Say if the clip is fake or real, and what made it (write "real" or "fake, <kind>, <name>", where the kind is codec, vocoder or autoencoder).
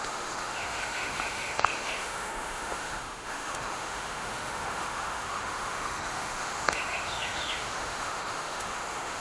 fake, autoencoder, DAC-VAE